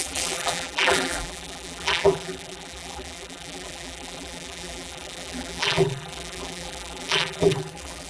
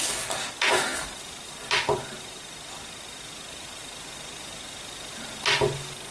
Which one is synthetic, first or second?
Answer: first